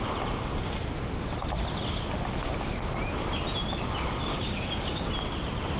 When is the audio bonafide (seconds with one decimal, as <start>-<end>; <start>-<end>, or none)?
0.0-4.3; 5.1-5.8